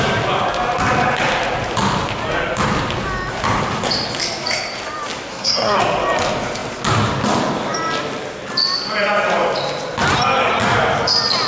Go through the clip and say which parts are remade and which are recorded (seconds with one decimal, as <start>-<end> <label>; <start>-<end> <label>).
0.0-5.3 recorded; 5.3-5.8 remade; 5.8-11.5 recorded